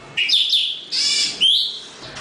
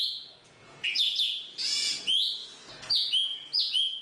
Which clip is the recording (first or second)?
first